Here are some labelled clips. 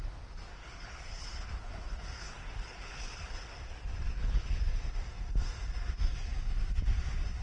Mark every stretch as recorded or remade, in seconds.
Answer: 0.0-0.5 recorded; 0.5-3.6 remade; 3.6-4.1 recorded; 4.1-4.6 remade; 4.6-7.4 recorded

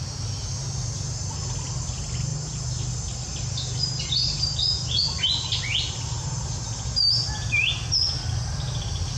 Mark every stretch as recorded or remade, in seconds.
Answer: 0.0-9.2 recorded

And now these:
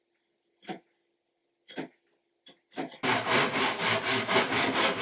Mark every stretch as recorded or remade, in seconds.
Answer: 0.0-5.0 recorded

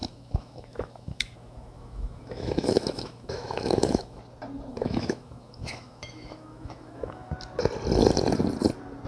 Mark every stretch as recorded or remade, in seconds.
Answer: 0.0-4.2 remade; 4.2-4.7 recorded; 4.7-7.3 remade; 7.3-9.1 recorded